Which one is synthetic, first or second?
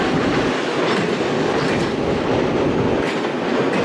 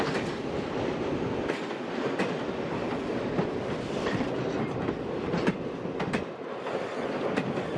second